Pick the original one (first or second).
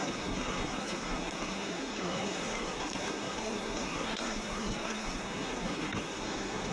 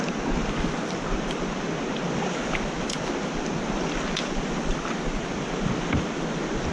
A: second